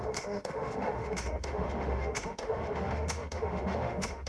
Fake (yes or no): yes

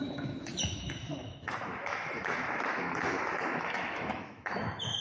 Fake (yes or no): yes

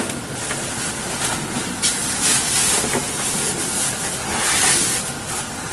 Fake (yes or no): no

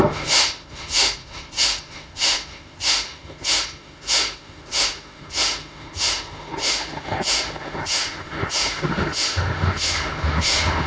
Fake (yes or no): yes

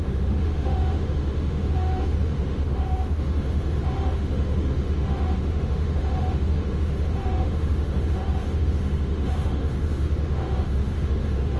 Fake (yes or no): yes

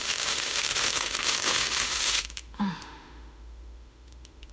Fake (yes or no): yes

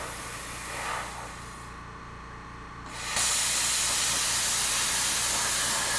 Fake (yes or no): no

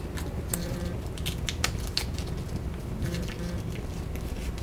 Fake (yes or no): no